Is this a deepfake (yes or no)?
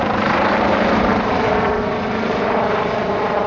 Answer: yes